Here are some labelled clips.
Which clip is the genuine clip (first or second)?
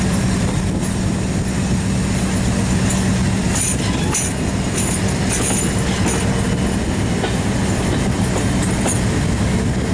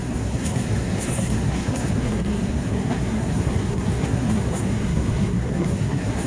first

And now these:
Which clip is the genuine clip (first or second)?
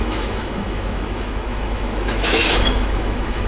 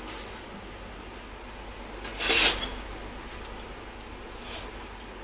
second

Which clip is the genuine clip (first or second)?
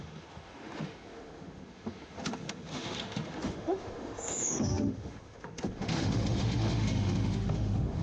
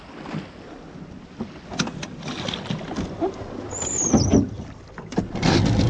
second